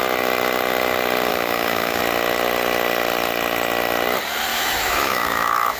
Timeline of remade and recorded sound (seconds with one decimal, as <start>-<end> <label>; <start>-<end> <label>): 0.0-1.3 recorded; 1.3-2.0 remade; 2.0-4.5 recorded; 4.5-5.8 remade